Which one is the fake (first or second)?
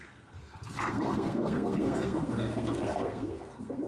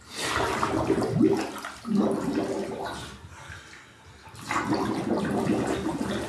first